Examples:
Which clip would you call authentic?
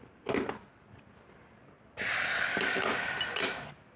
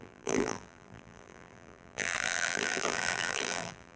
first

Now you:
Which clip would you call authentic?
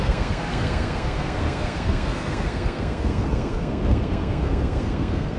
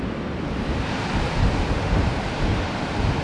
second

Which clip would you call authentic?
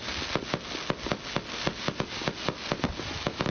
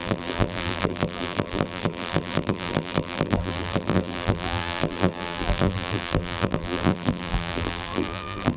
first